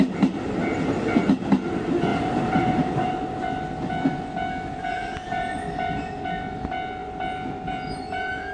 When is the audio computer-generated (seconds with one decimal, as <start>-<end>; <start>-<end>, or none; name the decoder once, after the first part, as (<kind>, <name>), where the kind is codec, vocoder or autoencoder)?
2.1-3.1 (vocoder, BigVGAN v2); 4.9-6.0